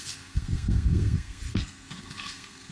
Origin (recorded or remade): remade